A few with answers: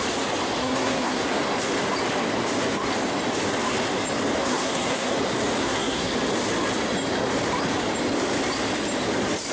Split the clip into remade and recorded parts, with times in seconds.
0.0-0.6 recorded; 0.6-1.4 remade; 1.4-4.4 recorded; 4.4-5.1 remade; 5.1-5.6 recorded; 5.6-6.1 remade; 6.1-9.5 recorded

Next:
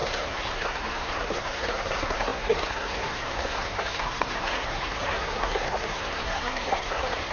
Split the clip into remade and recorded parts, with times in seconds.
0.0-7.3 remade

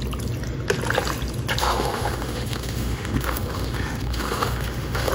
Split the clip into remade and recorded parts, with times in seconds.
0.0-1.6 recorded; 1.6-5.1 remade

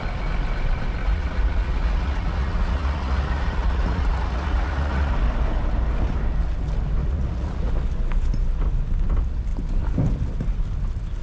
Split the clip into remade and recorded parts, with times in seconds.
0.0-1.0 recorded; 1.0-5.1 remade; 5.1-7.0 recorded; 7.0-7.7 remade; 7.7-11.2 recorded